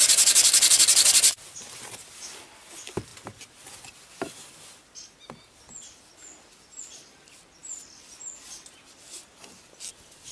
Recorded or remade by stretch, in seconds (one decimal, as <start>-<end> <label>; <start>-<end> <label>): 0.0-10.3 recorded